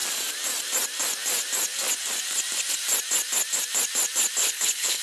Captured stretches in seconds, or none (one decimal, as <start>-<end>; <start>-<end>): 0.0-4.4